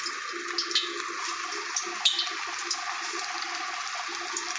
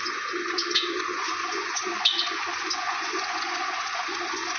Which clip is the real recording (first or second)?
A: first